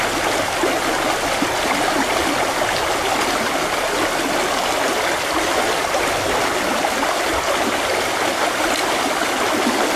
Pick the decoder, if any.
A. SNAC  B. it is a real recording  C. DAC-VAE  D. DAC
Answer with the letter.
B